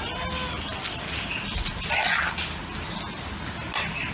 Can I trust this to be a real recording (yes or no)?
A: yes